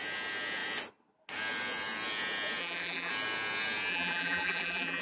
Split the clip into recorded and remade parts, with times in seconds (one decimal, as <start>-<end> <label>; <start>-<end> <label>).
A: 0.0-2.6 recorded; 2.6-3.1 remade; 3.1-3.9 recorded; 3.9-5.0 remade